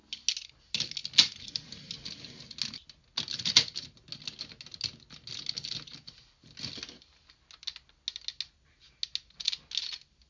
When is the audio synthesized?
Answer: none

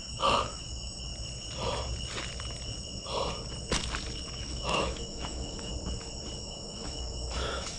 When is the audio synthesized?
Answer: 0.0-1.1 (autoencoder, DAC-VAE); 4.4-5.7; 6.4-7.8

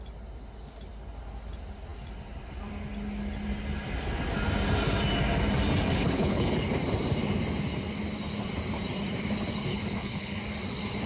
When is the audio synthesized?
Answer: 5.9-6.5 (codec, HILCodec); 9.7-10.4